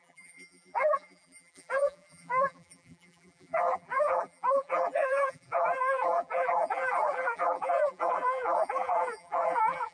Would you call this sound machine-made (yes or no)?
yes